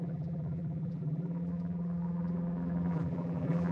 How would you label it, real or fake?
fake